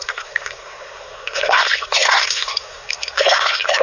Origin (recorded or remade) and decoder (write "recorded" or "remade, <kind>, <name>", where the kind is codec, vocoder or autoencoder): remade, codec, SNAC